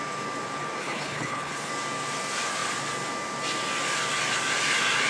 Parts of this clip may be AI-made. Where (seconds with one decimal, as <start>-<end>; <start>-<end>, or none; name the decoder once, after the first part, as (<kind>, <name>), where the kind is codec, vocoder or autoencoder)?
0.8-1.7 (codec, HILCodec)